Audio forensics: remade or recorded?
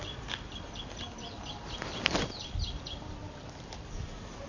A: recorded